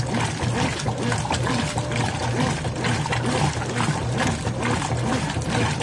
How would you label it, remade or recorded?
recorded